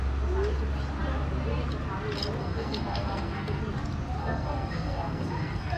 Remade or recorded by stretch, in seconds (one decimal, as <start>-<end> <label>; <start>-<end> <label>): 0.0-2.4 recorded; 2.4-3.6 remade; 3.6-4.2 recorded; 4.2-5.8 remade